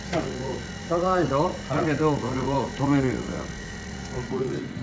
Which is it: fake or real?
fake